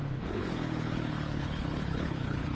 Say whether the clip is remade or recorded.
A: remade